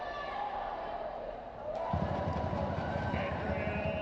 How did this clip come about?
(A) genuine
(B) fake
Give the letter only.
B